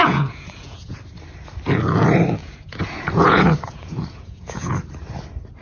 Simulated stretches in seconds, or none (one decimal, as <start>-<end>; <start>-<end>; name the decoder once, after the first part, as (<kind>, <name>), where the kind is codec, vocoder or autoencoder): 0.0-1.0 (vocoder, Vocos); 2.4-4.7